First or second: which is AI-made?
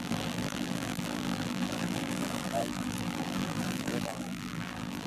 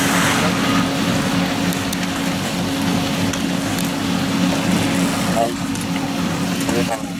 first